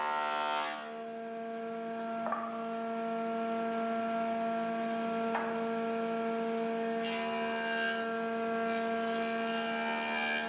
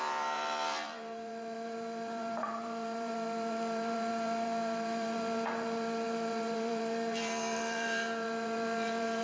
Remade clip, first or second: second